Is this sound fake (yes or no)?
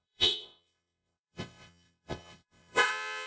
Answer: yes